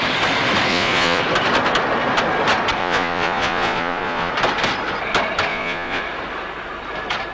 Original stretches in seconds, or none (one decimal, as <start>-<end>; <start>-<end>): 0.0-0.7; 1.2-2.8; 4.3-5.5; 6.0-7.3